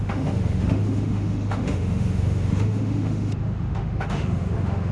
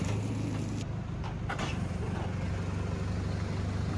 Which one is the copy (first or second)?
first